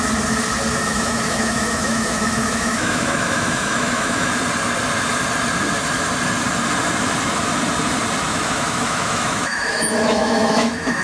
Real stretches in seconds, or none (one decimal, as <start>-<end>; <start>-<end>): 0.0-0.8; 4.3-8.3